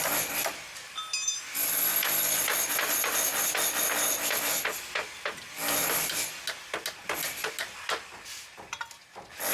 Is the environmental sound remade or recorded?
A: recorded